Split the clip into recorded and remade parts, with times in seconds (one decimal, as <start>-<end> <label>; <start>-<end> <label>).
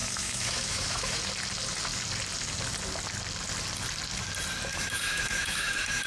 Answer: 0.0-1.2 remade; 1.2-4.7 recorded; 4.7-6.1 remade